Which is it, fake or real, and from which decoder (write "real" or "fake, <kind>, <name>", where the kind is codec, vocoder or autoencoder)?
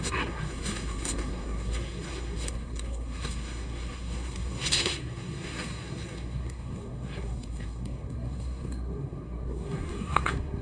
fake, codec, SNAC